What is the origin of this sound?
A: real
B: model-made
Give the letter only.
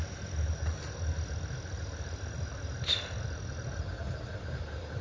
A